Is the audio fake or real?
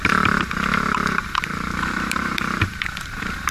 fake